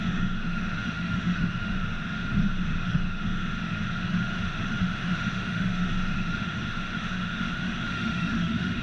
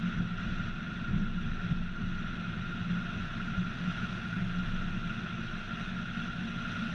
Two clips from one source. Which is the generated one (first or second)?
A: first